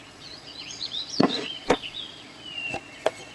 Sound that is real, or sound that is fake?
fake